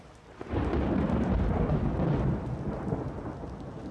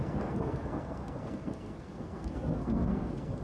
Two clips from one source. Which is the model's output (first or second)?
second